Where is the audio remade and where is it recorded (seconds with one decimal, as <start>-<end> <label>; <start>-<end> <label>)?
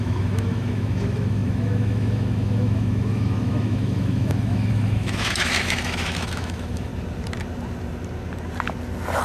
0.0-6.9 remade; 6.9-9.2 recorded